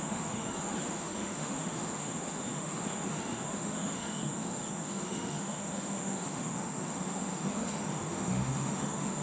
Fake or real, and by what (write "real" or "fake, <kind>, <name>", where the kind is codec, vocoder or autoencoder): fake, autoencoder, DAC-VAE